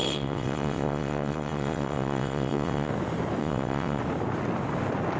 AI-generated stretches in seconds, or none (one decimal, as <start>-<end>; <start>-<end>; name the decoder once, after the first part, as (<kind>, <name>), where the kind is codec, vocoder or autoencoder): 0.0-2.9 (vocoder, WaveNeXt); 3.4-4.0